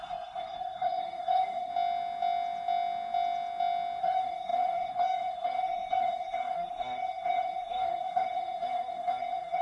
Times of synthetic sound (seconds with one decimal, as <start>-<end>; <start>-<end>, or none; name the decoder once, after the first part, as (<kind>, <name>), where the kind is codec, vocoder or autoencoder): 0.0-1.7 (codec, SNAC); 4.0-9.6